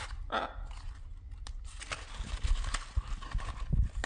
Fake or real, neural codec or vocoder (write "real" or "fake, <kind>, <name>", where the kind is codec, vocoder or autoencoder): real